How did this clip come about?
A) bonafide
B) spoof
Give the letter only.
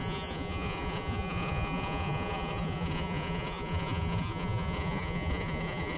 B